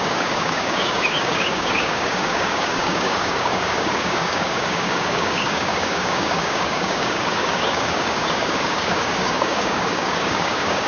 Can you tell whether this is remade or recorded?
remade